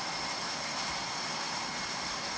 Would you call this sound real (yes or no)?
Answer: yes